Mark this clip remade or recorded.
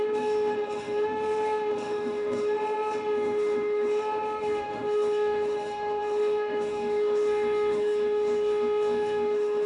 remade